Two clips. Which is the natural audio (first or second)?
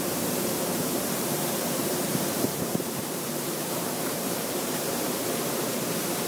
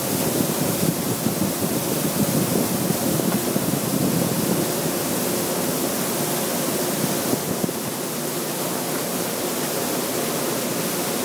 second